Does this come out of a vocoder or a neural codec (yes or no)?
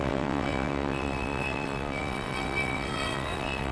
yes